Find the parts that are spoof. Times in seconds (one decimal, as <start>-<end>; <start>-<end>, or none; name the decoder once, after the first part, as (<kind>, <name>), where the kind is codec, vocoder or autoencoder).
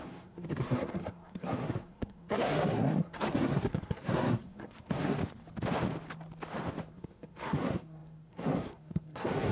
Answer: 0.0-5.2 (codec, SNAC); 6.9-9.5